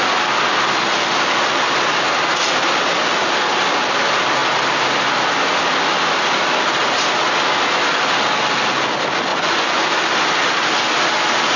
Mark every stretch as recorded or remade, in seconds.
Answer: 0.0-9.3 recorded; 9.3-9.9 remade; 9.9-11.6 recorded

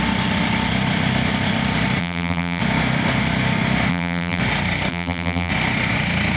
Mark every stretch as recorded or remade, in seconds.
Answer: 0.0-2.0 recorded; 2.0-2.6 remade; 2.6-3.9 recorded; 3.9-4.4 remade; 4.4-4.9 recorded; 4.9-5.5 remade; 5.5-6.4 recorded

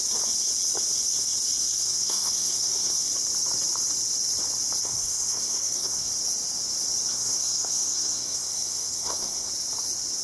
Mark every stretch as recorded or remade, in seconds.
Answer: 0.0-1.6 recorded; 1.6-3.0 remade; 3.0-4.8 recorded; 4.8-6.1 remade; 6.1-7.1 recorded; 7.1-9.5 remade; 9.5-10.2 recorded

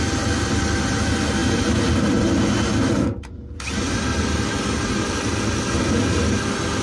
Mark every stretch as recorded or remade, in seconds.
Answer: 0.0-6.8 recorded

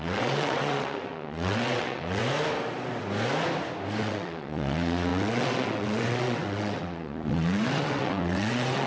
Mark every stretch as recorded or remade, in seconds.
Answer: 0.0-2.2 remade; 2.2-4.0 recorded; 4.0-8.9 remade